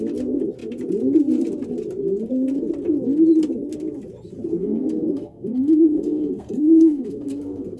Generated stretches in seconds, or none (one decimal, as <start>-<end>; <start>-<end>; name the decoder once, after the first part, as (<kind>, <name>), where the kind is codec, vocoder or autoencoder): 4.6-7.8 (codec, SNAC)

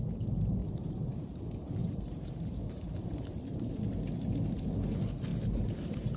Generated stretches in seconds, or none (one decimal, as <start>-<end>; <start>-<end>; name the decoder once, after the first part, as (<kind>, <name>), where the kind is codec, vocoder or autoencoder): 0.6-1.4 (vocoder, BigVGAN v2); 1.8-3.7; 5.3-6.2

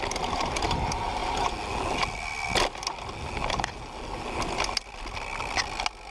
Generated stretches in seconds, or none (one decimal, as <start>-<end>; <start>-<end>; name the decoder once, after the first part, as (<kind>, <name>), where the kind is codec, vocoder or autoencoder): none

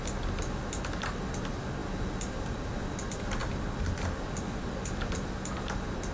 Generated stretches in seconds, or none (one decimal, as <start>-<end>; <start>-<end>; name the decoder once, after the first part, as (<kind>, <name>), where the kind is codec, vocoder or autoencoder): 3.4-5.3 (vocoder, BigVGAN v2)

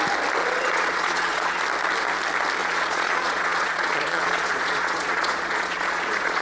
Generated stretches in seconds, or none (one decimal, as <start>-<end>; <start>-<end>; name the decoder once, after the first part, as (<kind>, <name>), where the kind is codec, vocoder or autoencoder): 0.4-1.6 (vocoder, Vocos); 2.6-6.4

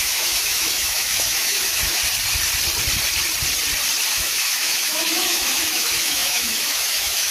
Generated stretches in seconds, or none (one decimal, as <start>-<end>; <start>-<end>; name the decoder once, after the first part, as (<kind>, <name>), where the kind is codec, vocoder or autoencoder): 0.0-2.0 (autoencoder, DAC-VAE); 4.1-7.3

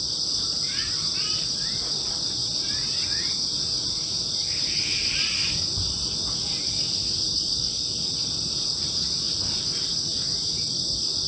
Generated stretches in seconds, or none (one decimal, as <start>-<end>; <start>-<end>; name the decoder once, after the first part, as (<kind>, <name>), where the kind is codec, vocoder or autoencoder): none